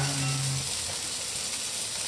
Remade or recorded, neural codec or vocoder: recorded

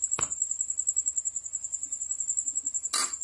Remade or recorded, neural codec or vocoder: recorded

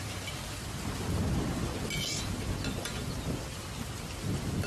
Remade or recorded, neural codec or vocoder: recorded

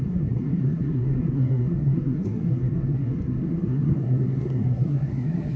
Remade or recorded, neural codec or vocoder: remade, codec, SNAC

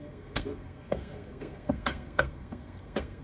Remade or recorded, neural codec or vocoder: remade, codec, SNAC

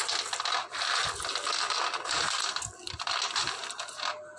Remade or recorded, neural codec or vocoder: recorded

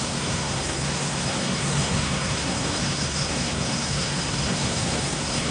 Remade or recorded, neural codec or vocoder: remade, codec, SNAC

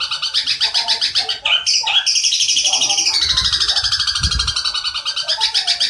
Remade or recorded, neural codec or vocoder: recorded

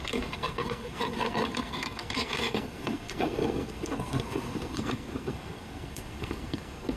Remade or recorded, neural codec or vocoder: remade, codec, SNAC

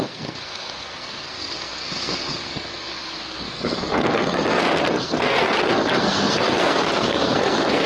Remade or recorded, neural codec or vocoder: remade, codec, SNAC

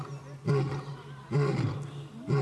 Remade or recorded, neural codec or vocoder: recorded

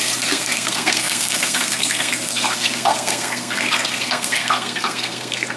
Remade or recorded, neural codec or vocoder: remade, codec, SNAC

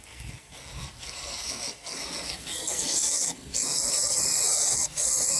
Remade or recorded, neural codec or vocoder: remade, codec, SNAC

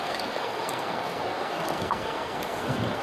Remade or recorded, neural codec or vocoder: remade, codec, SNAC